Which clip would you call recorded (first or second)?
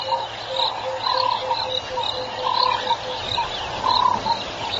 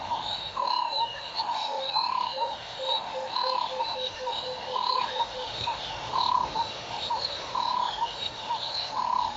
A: first